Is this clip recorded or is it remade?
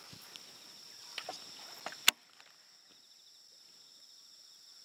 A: recorded